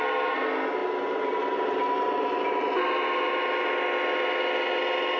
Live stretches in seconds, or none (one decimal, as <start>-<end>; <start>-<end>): 0.0-5.2